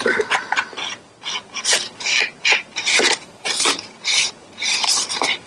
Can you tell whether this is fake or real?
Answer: fake